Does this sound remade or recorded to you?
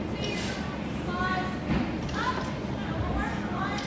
recorded